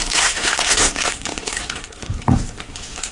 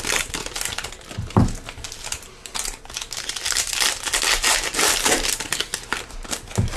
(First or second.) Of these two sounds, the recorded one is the second